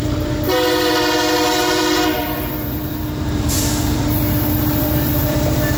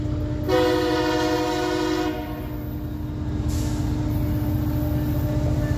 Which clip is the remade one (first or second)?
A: first